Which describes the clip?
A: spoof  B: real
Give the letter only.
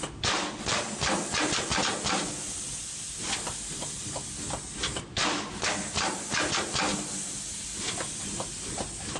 B